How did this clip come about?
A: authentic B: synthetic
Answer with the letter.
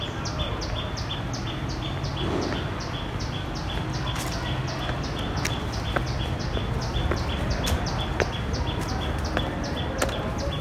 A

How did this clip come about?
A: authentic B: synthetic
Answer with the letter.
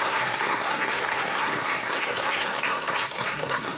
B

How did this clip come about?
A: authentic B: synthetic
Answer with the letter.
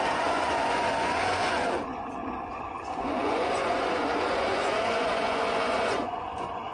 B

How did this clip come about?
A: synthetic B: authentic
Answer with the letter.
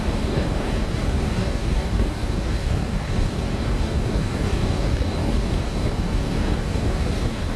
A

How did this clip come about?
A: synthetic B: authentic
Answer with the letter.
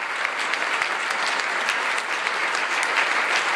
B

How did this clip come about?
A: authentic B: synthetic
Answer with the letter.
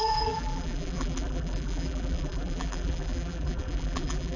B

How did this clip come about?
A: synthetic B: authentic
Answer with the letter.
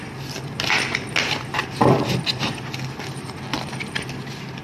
B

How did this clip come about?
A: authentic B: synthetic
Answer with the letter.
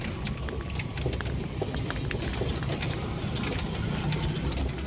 A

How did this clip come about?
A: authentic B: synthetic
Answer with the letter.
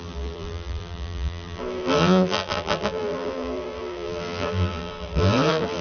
B